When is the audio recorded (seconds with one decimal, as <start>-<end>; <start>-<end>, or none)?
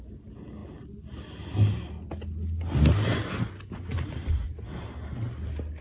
0.0-5.8